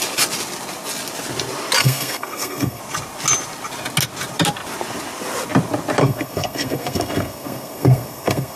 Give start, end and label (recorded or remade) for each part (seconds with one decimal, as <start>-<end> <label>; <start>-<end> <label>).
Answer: 0.0-1.8 recorded; 1.8-2.8 remade; 2.8-6.0 recorded; 6.0-8.6 remade

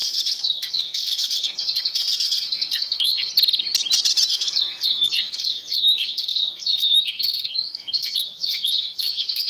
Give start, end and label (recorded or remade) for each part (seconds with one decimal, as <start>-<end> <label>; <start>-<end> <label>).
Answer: 0.0-3.3 remade; 3.3-4.3 recorded; 4.3-9.5 remade

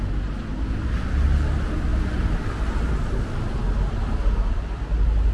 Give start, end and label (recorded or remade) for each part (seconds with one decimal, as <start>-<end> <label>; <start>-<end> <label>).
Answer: 0.0-5.3 recorded

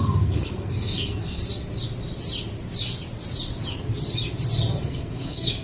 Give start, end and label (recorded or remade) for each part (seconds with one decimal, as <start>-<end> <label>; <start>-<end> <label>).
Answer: 0.0-1.4 remade; 1.4-4.8 recorded; 4.8-5.6 remade